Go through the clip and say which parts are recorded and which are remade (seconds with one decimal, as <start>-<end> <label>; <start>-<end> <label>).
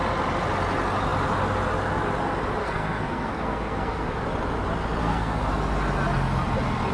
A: 0.0-2.6 recorded; 2.6-4.2 remade; 4.2-5.0 recorded; 5.0-5.5 remade; 5.5-6.9 recorded